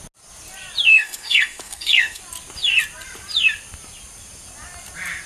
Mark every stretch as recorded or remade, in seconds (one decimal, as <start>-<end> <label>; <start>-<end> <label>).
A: 0.0-0.9 recorded; 0.9-2.2 remade; 2.2-5.3 recorded